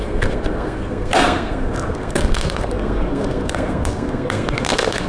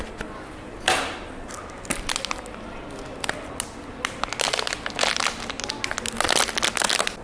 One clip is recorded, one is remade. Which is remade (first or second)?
first